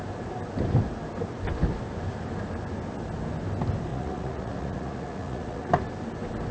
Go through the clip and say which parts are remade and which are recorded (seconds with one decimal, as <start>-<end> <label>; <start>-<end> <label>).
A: 0.0-3.9 recorded; 3.9-5.7 remade; 5.7-6.5 recorded